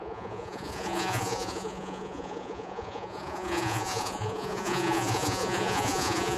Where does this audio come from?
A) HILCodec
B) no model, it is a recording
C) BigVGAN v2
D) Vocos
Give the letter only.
D